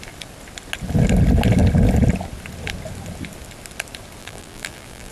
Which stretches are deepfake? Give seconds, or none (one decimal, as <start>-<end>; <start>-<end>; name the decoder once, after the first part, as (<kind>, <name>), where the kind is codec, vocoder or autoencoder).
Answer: 4.2-5.1 (vocoder, BigVGAN v2)